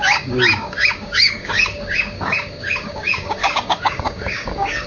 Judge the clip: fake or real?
fake